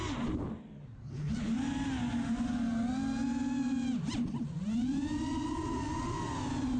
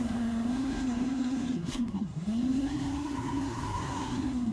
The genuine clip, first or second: first